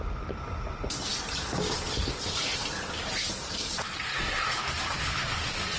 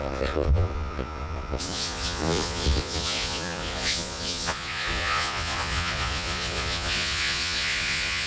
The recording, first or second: first